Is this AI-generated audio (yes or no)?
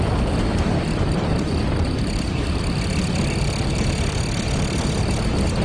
no